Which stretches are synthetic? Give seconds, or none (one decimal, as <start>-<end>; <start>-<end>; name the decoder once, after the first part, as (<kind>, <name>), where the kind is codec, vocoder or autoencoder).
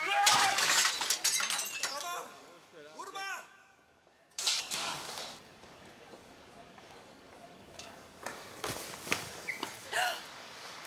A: 0.0-0.8 (codec, DAC); 1.9-10.9